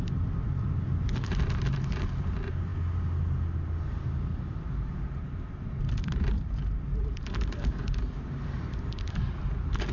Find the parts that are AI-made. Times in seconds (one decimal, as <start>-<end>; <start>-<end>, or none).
none